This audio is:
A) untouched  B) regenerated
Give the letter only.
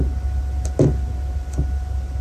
A